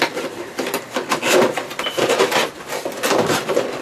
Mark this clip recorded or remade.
recorded